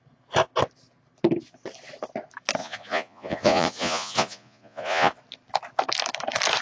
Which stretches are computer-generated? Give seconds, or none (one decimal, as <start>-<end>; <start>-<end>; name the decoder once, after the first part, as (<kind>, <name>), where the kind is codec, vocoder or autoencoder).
2.6-5.1 (vocoder, Vocos)